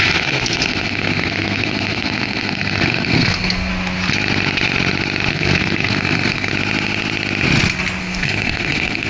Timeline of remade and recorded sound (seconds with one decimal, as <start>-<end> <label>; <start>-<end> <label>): 0.0-3.7 remade; 3.7-5.3 recorded; 5.3-6.5 remade; 6.5-8.0 recorded; 8.0-9.1 remade